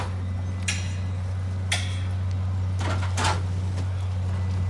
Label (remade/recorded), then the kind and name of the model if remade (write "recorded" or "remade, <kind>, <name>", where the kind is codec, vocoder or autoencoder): recorded